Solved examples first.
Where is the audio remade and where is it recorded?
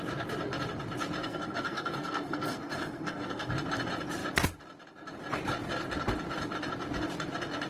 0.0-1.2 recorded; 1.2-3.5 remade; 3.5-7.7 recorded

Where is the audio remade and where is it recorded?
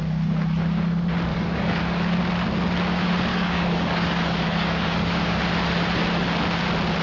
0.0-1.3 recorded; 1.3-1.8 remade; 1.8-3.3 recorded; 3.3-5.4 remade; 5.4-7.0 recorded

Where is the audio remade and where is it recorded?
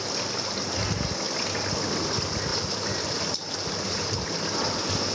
0.0-2.5 recorded; 2.5-4.3 remade; 4.3-5.1 recorded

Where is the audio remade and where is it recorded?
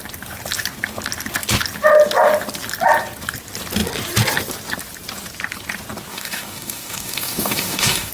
0.0-6.1 recorded; 6.1-8.1 remade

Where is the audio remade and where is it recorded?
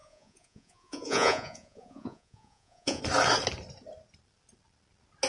0.0-3.0 remade; 3.0-5.3 recorded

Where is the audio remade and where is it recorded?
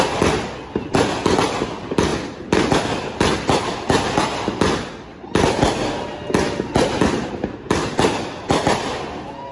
0.0-9.5 recorded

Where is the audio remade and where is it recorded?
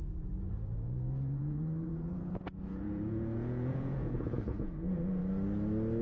0.0-5.2 remade; 5.2-6.0 recorded